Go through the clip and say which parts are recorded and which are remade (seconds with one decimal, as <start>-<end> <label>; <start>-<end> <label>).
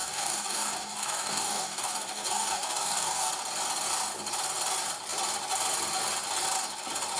0.0-3.3 remade; 3.3-7.2 recorded